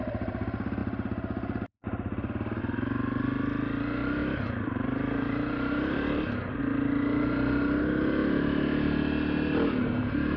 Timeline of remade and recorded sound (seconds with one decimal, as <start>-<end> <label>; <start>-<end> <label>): 0.0-4.2 recorded; 4.2-6.6 remade; 6.6-10.4 recorded